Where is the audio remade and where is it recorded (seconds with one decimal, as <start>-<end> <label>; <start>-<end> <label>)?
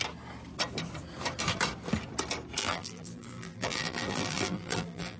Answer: 0.0-2.6 recorded; 2.6-5.2 remade